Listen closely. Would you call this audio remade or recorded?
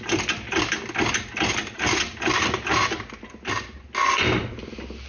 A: recorded